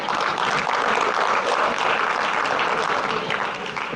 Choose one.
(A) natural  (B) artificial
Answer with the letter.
A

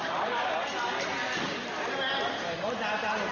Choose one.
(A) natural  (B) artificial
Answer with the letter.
A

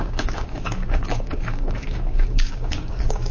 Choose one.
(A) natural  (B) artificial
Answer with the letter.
B